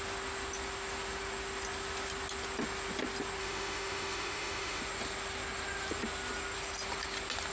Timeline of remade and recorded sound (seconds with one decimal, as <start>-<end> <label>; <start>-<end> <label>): 0.0-3.4 recorded; 3.4-4.8 remade; 4.8-7.5 recorded